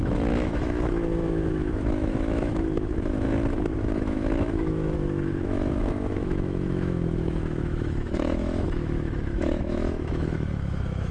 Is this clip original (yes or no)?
no